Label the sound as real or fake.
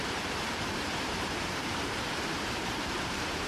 fake